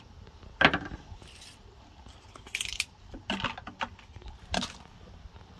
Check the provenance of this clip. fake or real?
real